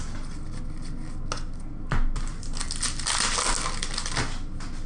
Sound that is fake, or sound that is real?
real